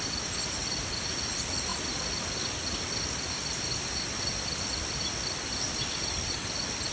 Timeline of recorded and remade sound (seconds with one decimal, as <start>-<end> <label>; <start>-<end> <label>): 0.0-6.9 recorded